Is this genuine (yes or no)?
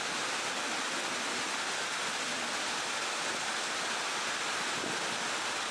yes